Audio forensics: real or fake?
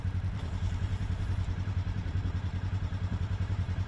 fake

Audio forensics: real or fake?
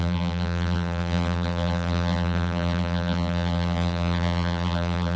fake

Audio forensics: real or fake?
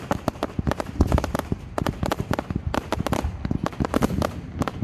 real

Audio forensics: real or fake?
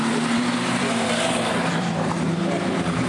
fake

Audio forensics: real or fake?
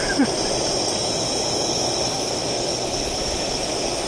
real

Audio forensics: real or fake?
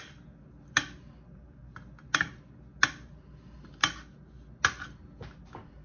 real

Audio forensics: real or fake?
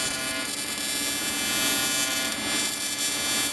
real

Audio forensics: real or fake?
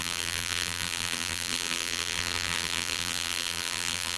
fake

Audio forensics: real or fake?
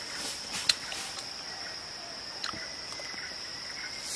fake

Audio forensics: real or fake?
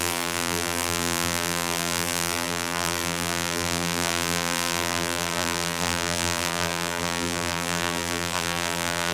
fake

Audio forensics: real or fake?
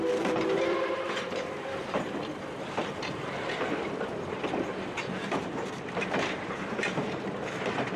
fake